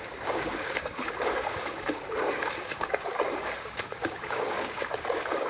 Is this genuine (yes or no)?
no